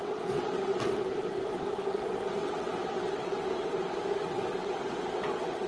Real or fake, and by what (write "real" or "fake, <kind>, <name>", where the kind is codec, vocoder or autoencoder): fake, vocoder, WaveNeXt